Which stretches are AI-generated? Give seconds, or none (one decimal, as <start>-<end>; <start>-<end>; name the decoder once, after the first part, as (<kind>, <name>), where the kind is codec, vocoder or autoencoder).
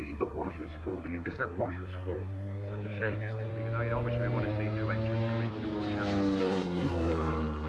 0.0-3.5 (codec, SNAC); 6.4-7.7